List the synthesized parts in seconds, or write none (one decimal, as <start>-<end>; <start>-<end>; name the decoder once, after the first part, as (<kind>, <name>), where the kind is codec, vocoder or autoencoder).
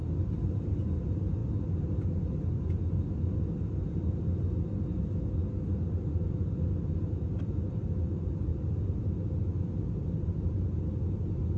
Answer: none